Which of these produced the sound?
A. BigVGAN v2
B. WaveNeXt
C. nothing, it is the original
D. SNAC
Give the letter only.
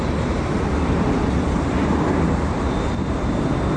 C